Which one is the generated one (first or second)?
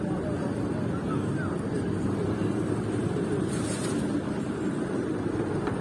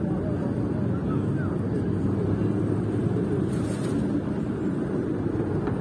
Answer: first